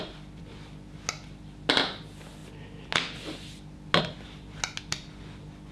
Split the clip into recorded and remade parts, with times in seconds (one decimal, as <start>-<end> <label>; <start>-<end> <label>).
0.0-5.7 recorded